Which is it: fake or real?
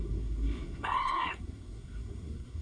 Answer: fake